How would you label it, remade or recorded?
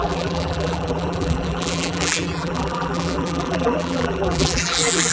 remade